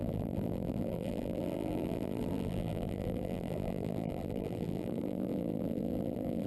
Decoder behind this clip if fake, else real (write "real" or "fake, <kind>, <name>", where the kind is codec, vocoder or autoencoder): fake, vocoder, BigVGAN v2